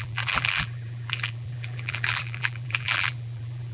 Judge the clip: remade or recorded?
remade